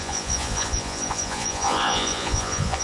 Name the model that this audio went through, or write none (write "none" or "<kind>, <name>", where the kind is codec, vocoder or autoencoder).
vocoder, Vocos